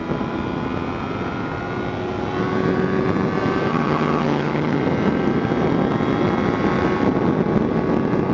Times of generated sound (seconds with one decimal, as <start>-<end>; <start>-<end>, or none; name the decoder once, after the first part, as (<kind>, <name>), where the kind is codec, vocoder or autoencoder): 3.7-4.8 (vocoder, HiFi-GAN)